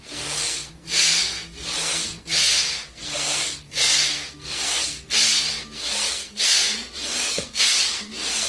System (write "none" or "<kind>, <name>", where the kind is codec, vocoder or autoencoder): codec, SNAC